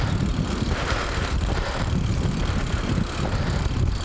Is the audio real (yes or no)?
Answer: yes